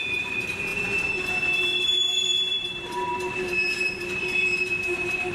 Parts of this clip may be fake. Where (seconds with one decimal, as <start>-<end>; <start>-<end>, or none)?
0.0-5.3